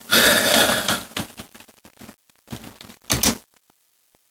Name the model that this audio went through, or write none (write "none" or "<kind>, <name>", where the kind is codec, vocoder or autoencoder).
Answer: none